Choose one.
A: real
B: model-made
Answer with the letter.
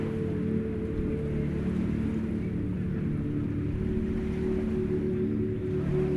A